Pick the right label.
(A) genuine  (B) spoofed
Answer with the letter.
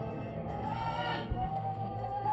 B